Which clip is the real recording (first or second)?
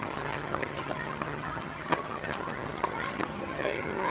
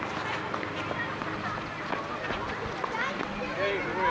second